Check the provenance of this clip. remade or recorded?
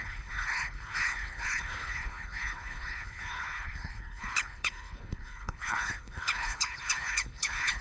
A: remade